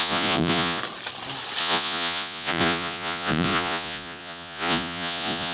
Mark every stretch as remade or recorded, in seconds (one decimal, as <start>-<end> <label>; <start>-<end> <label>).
0.0-0.8 remade; 0.8-1.6 recorded; 1.6-5.5 remade